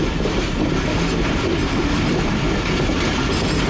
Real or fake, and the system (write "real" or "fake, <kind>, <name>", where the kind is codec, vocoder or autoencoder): real